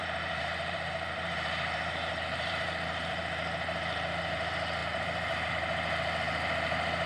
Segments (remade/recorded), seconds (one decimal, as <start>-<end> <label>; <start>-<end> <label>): 0.0-3.2 remade; 3.2-4.8 recorded; 4.8-5.5 remade; 5.5-7.1 recorded